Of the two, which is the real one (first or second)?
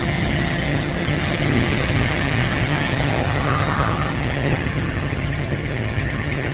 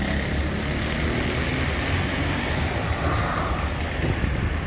second